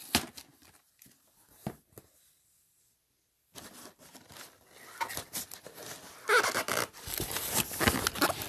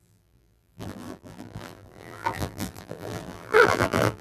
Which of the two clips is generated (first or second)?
second